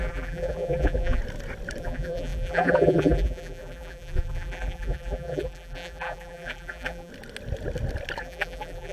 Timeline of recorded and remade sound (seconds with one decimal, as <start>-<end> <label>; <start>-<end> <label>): 0.0-1.2 remade; 1.2-1.8 recorded; 1.8-7.1 remade; 7.1-8.2 recorded; 8.2-8.9 remade